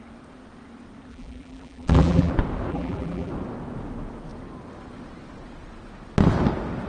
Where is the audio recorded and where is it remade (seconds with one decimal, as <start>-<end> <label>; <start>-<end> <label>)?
0.0-1.1 recorded; 1.1-2.3 remade; 2.3-2.7 recorded; 2.7-3.3 remade; 3.3-6.9 recorded